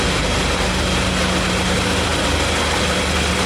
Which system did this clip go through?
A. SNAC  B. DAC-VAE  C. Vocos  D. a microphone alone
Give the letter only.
D